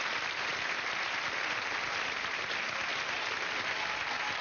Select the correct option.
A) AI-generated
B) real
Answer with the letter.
B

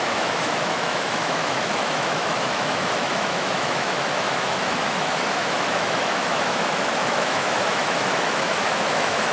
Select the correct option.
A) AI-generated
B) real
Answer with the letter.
A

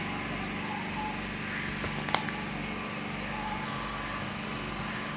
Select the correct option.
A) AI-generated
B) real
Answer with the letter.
B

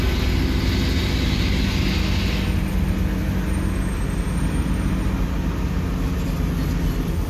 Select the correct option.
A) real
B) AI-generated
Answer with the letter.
A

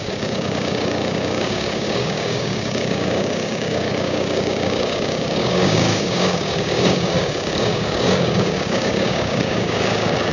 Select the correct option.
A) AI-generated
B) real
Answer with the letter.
A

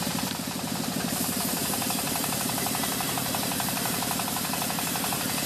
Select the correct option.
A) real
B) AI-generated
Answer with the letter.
B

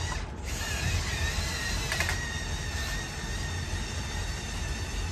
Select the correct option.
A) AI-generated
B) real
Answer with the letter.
B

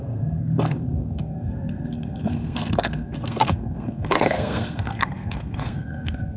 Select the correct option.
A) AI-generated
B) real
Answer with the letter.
A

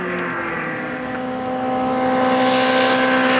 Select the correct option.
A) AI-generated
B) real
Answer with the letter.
B